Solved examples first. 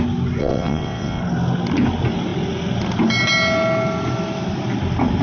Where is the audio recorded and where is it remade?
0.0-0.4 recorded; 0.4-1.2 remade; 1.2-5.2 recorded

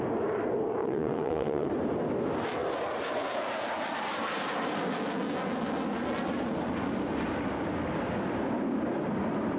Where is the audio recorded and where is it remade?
0.0-0.8 recorded; 0.8-1.7 remade; 1.7-9.6 recorded

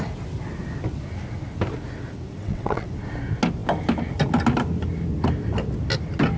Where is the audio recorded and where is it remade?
0.0-2.4 recorded; 2.4-2.9 remade; 2.9-6.4 recorded

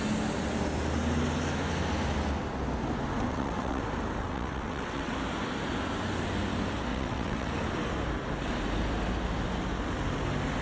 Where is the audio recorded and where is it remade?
0.0-3.3 recorded; 3.3-3.8 remade; 3.8-4.2 recorded; 4.2-5.1 remade; 5.1-6.9 recorded; 6.9-7.5 remade; 7.5-10.6 recorded

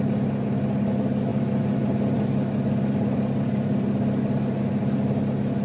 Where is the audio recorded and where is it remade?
0.0-5.6 recorded

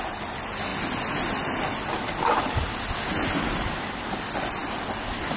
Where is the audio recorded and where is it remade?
0.0-5.4 recorded

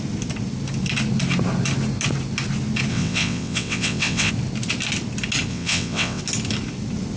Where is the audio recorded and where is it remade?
0.0-2.9 recorded; 2.9-4.3 remade; 4.3-5.5 recorded; 5.5-6.2 remade; 6.2-7.2 recorded

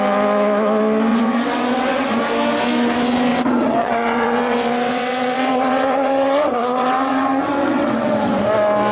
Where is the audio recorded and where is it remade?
0.0-1.1 recorded; 1.1-2.2 remade; 2.2-3.3 recorded; 3.3-8.4 remade; 8.4-8.9 recorded